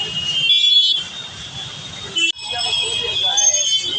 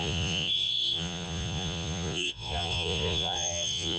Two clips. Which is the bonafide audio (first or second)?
first